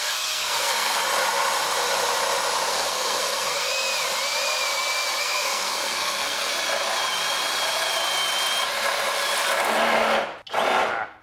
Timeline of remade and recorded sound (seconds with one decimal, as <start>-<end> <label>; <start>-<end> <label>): 0.0-1.0 remade; 1.0-2.7 recorded; 2.7-3.7 remade; 3.7-5.2 recorded; 5.2-6.5 remade; 6.5-11.2 recorded